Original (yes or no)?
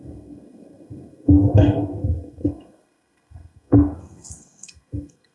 no